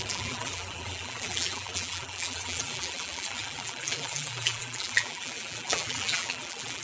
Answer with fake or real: fake